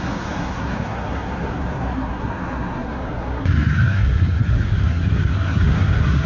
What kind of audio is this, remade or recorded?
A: remade